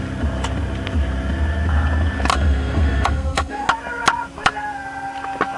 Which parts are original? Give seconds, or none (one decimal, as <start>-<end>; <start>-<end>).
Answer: 0.0-2.3; 3.7-5.6